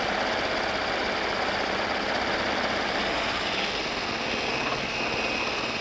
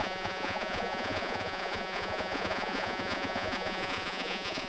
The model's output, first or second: second